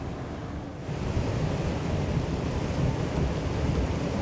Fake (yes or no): no